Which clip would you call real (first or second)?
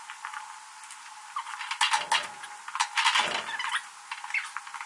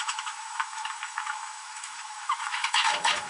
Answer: first